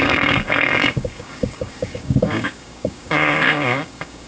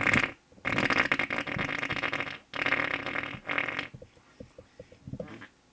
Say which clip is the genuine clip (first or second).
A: second